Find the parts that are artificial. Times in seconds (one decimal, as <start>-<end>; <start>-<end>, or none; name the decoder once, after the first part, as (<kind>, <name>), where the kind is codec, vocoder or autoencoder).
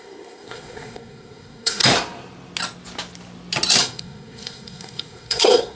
0.0-1.8 (codec, SNAC); 3.8-5.8